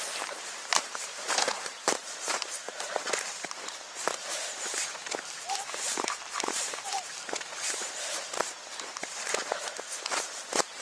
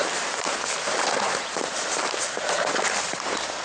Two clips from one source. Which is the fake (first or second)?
first